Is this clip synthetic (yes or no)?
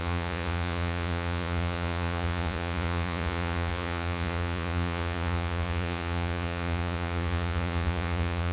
yes